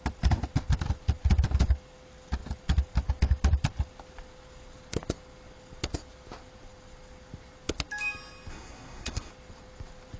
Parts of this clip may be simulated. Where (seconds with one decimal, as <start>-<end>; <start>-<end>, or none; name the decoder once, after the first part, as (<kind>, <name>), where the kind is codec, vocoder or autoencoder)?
8.5-9.3 (codec, SNAC)